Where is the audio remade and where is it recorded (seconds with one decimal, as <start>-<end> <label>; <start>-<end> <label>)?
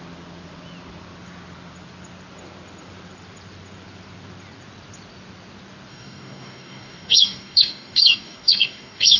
0.0-5.9 recorded; 5.9-9.2 remade